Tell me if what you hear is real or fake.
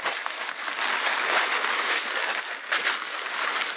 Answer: real